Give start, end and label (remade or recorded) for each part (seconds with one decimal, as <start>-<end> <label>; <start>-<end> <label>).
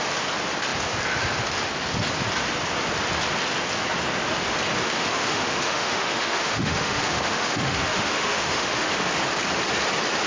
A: 0.0-4.8 recorded; 4.8-8.9 remade; 8.9-10.3 recorded